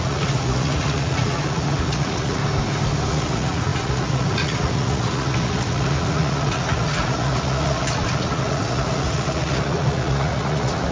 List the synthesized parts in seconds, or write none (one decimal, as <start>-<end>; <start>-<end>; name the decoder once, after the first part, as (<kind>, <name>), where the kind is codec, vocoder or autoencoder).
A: 0.0-2.4 (vocoder, Vocos); 3.1-10.9

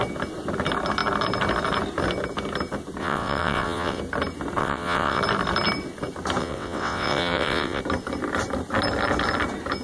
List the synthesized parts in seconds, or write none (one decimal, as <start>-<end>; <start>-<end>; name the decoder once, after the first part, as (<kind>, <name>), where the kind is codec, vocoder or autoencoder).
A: 3.0-4.0 (vocoder, WaveNeXt); 4.6-5.2; 6.4-7.8